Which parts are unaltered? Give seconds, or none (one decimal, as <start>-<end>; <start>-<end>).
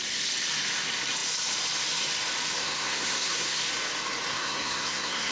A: 0.0-2.6; 3.6-4.3